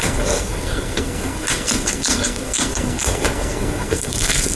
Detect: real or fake fake